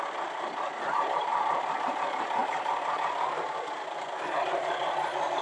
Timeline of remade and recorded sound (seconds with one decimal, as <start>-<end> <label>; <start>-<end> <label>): 0.0-5.4 recorded